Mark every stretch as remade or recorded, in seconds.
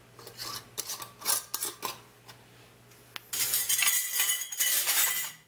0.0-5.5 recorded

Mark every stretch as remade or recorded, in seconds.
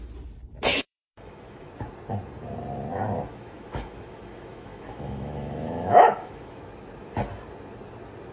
0.0-0.7 recorded; 0.7-1.7 remade; 1.7-3.3 recorded; 3.3-6.6 remade; 6.6-8.3 recorded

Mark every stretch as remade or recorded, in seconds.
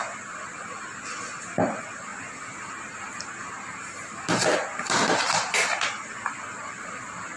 0.0-7.4 recorded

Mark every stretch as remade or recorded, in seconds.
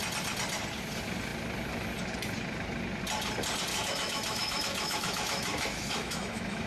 0.0-3.7 recorded; 3.7-6.7 remade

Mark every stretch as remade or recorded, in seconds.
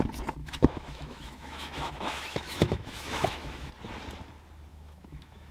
0.0-0.4 recorded; 0.4-3.7 remade; 3.7-4.7 recorded; 4.7-5.5 remade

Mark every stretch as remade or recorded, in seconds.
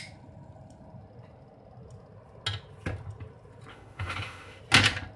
0.0-3.7 recorded; 3.7-4.6 remade; 4.6-5.2 recorded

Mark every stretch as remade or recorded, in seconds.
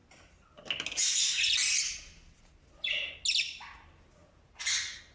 0.0-5.1 recorded